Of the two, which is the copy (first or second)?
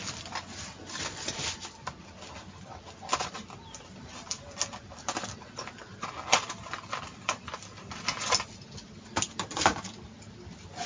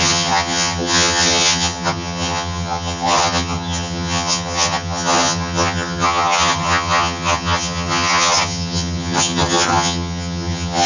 second